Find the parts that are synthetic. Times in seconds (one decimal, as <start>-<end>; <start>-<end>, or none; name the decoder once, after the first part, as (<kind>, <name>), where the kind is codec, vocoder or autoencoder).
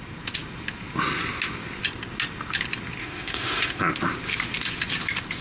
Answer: 3.0-3.8 (autoencoder, DAC-VAE)